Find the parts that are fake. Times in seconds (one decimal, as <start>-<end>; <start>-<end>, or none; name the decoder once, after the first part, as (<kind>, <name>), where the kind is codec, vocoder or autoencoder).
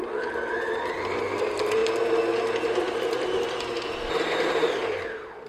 none